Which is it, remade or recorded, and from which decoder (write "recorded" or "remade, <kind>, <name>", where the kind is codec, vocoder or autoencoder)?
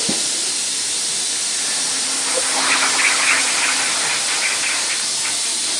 recorded